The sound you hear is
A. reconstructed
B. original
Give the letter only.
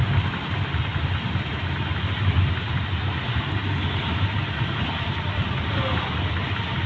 B